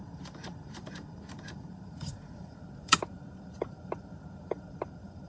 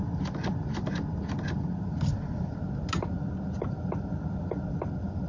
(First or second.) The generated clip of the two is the first